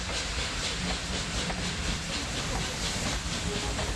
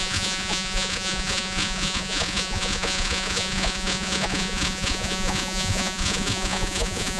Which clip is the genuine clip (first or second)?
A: first